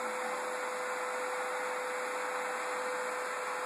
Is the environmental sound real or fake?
real